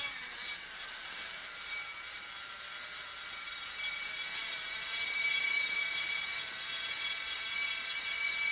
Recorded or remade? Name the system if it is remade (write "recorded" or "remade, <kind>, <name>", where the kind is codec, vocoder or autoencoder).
recorded